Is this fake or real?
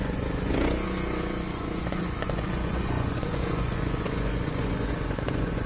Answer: fake